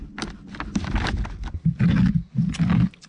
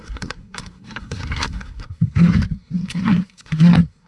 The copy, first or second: second